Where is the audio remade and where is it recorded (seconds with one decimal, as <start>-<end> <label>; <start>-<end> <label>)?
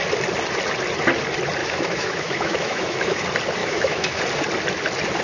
0.0-1.6 recorded; 1.6-3.2 remade; 3.2-3.6 recorded; 3.6-4.2 remade; 4.2-5.2 recorded